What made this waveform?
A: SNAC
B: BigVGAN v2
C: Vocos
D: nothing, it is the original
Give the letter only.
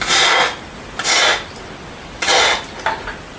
D